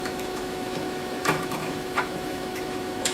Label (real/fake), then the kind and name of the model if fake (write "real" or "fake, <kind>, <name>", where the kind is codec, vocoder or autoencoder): fake, autoencoder, DAC-VAE